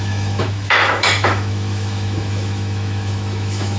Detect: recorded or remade remade